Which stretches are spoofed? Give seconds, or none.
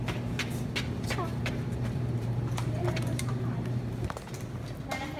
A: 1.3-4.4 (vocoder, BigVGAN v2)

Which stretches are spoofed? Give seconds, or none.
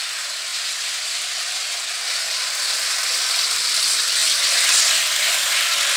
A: 0.5-3.4 (vocoder, BigVGAN v2); 4.2-4.9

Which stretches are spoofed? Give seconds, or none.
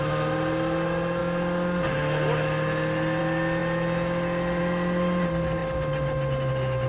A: none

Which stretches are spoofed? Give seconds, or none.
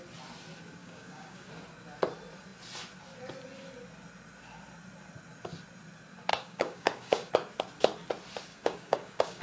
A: 0.8-1.5 (codec, DAC); 6.3-7.3; 8.5-9.4